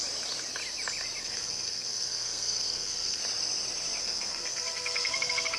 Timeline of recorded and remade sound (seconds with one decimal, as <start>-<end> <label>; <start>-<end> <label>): 0.0-1.2 recorded; 1.2-3.2 remade; 3.2-4.0 recorded; 4.0-5.6 remade